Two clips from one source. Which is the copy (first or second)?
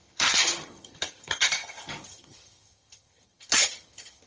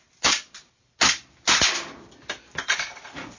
first